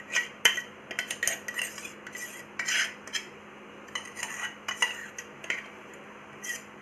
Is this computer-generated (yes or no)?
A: no